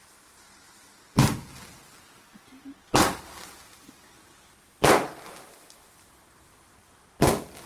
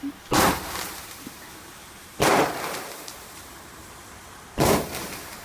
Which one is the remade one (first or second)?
second